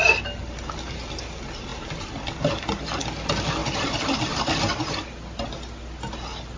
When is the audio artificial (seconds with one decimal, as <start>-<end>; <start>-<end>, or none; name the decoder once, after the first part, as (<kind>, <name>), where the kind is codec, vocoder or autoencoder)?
3.6-4.3 (vocoder, BigVGAN v2)